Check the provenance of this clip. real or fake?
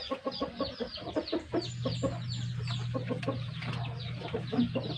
fake